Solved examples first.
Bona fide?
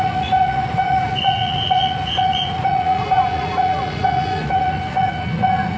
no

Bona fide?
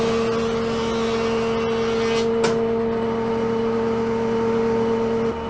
yes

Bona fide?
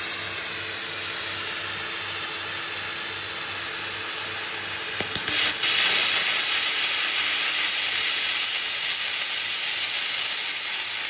yes